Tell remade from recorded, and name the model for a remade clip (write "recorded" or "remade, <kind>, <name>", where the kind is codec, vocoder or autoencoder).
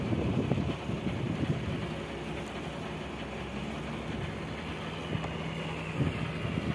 recorded